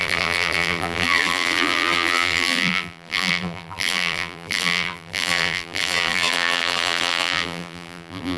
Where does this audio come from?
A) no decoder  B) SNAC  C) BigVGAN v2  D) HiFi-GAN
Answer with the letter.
C